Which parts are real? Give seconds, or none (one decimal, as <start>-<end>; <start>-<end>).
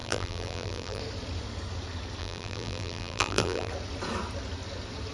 1.0-2.2; 3.7-5.1